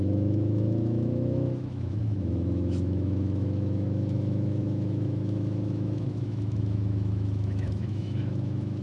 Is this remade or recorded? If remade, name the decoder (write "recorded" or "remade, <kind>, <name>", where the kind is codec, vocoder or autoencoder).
remade, autoencoder, DAC-VAE